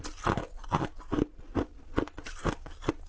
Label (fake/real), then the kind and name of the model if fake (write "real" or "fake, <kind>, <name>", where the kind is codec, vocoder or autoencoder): real